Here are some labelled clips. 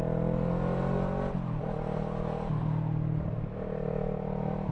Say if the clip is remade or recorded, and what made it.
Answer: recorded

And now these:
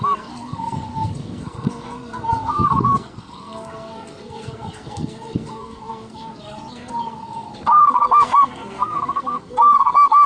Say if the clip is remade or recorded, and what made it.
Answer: remade, codec, SNAC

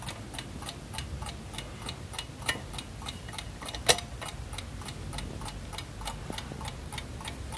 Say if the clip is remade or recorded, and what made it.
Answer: recorded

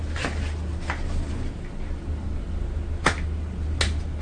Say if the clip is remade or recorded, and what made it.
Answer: recorded